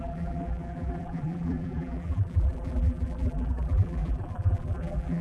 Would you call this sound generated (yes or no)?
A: yes